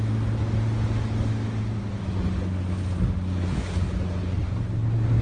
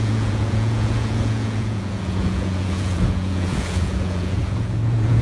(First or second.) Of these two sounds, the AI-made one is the second